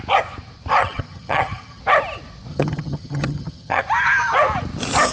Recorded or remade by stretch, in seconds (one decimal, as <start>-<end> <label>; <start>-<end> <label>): 0.0-0.8 recorded; 0.8-1.8 remade; 1.8-2.5 recorded; 2.5-3.8 remade; 3.8-5.1 recorded